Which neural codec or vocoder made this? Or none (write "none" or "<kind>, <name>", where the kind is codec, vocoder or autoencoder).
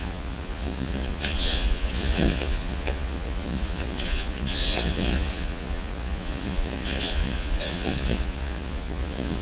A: vocoder, Vocos